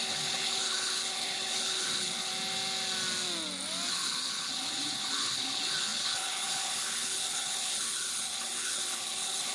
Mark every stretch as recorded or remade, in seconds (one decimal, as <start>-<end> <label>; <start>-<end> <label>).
0.0-2.3 remade; 2.3-3.9 recorded; 3.9-9.5 remade